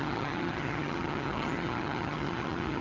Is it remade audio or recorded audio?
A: remade